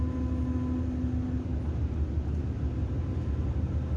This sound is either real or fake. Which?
real